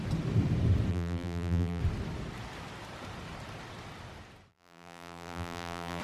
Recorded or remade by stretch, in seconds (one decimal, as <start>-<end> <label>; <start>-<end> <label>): 0.0-0.9 recorded; 0.9-1.8 remade; 1.8-4.5 recorded; 4.5-6.0 remade